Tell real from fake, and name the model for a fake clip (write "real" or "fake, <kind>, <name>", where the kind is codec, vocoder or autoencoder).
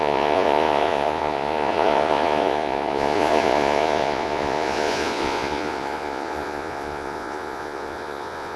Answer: fake, vocoder, Vocos